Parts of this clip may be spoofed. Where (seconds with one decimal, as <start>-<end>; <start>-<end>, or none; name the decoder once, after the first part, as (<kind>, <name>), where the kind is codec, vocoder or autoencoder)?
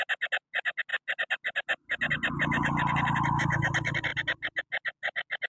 none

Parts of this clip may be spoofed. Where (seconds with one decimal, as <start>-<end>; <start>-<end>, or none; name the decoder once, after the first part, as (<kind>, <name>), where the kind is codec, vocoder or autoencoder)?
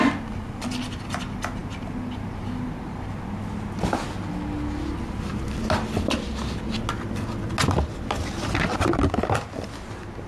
none